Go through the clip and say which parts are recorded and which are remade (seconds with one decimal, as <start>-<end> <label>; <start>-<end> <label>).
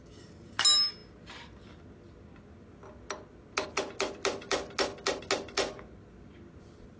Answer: 0.0-7.0 recorded